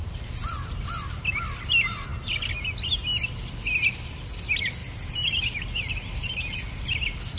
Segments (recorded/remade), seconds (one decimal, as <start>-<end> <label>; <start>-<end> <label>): 0.0-0.8 remade; 0.8-4.8 recorded; 4.8-5.4 remade; 5.4-7.4 recorded